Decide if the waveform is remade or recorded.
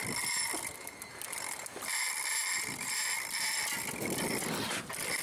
recorded